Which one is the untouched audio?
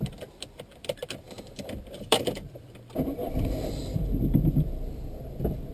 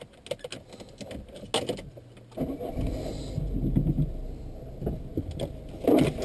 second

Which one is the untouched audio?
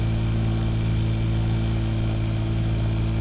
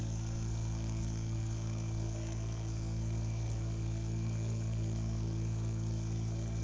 first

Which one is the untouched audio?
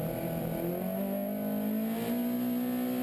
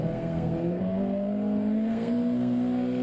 first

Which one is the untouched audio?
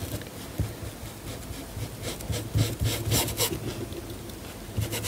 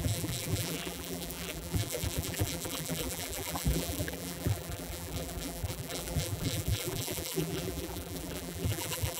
first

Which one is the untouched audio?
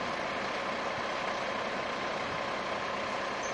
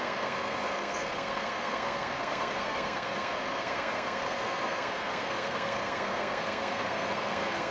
first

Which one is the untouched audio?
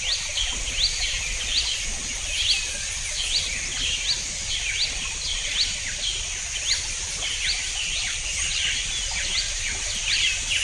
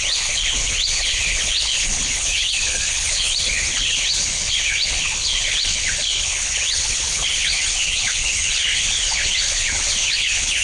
first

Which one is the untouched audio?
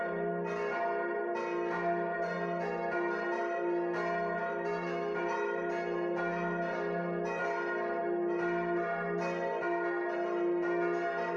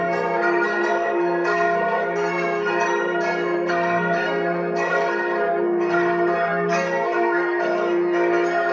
first